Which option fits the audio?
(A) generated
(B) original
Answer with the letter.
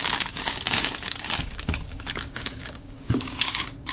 A